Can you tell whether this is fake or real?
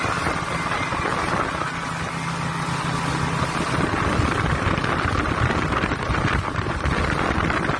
real